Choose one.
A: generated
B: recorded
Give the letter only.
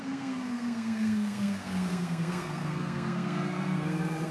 A